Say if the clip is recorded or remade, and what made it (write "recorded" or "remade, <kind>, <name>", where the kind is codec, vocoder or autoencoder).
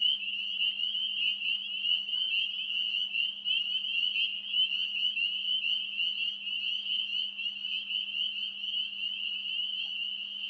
recorded